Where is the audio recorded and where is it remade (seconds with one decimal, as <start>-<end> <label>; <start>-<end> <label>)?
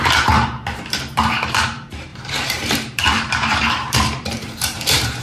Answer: 0.0-5.2 remade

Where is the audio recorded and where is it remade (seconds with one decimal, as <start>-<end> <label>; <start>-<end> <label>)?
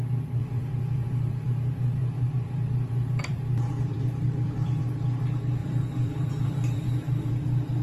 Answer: 0.0-0.4 recorded; 0.4-1.5 remade; 1.5-2.0 recorded; 2.0-4.8 remade; 4.8-5.6 recorded; 5.6-7.3 remade; 7.3-7.8 recorded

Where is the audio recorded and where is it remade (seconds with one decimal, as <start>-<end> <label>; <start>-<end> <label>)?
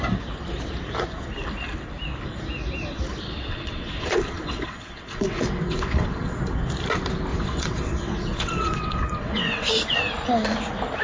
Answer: 0.0-3.5 recorded; 3.5-6.4 remade; 6.4-7.3 recorded; 7.3-9.7 remade; 9.7-11.0 recorded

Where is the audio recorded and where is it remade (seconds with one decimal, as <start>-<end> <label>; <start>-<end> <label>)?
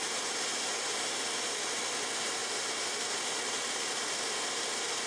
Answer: 0.0-5.1 recorded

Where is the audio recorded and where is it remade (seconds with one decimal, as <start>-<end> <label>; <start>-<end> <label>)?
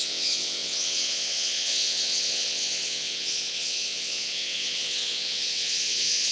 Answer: 0.0-6.3 remade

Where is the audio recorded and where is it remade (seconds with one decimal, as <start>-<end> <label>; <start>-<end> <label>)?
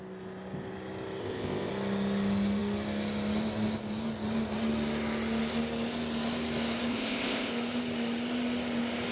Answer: 0.0-1.2 recorded; 1.2-1.7 remade; 1.7-6.9 recorded; 6.9-7.5 remade; 7.5-9.1 recorded